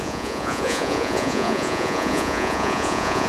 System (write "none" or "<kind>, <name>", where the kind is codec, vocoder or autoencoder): vocoder, Vocos